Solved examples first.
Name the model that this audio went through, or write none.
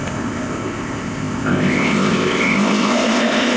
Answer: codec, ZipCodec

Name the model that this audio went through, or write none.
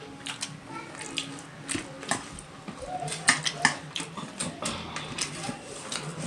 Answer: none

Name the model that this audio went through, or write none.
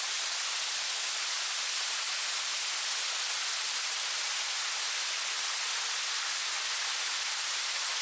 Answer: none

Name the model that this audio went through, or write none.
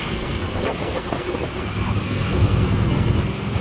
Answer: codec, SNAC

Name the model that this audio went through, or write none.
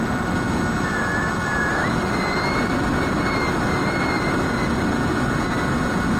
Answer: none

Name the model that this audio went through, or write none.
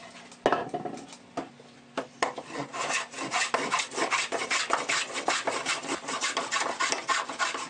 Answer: none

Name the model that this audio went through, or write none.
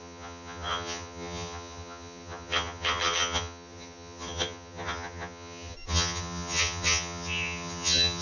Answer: vocoder, HiFi-GAN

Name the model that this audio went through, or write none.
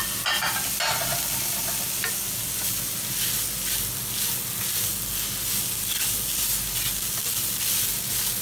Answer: none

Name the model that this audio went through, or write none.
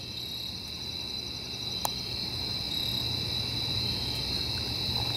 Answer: none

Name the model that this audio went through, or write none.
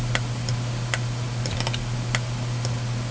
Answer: none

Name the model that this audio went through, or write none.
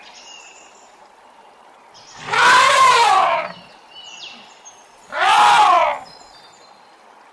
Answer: none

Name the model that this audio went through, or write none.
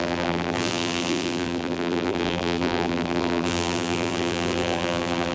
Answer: vocoder, BigVGAN v2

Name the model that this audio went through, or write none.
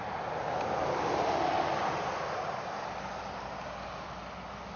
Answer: none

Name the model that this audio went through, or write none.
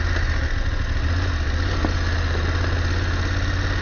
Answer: none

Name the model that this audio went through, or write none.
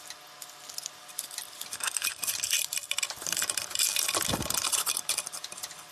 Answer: none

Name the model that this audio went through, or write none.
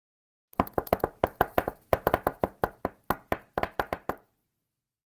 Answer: vocoder, BigVGAN v2